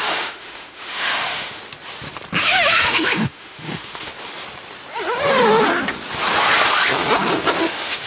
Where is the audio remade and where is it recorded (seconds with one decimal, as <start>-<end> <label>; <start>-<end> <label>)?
0.0-1.6 remade; 1.6-2.4 recorded; 2.4-4.1 remade; 4.1-7.6 recorded; 7.6-8.1 remade